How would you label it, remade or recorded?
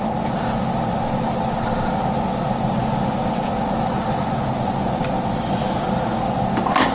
recorded